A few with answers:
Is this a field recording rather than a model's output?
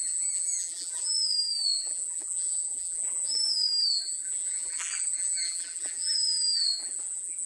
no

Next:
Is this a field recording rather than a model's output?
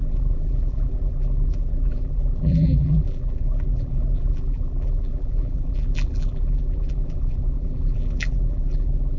no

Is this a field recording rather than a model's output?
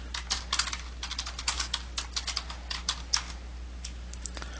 yes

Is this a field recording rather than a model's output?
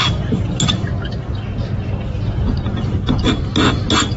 yes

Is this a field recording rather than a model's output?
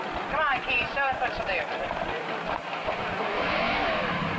yes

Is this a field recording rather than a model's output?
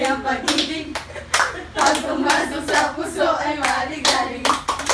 no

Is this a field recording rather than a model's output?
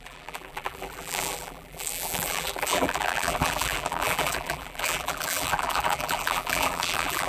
no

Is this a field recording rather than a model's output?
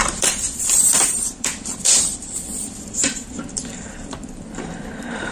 no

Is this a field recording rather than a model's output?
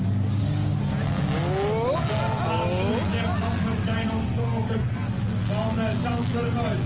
yes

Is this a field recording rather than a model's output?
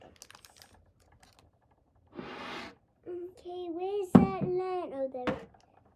yes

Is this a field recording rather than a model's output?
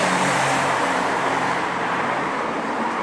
no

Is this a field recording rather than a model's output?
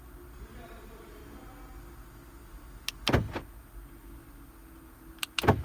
yes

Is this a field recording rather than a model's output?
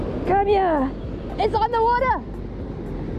yes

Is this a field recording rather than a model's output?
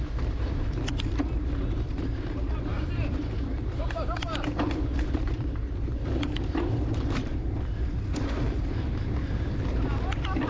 no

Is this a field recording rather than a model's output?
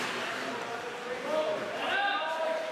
no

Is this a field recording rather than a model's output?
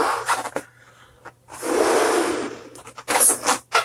yes